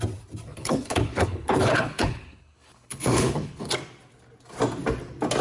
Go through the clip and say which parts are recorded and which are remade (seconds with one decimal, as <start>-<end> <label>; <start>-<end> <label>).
0.0-0.5 recorded; 0.5-3.7 remade; 3.7-5.4 recorded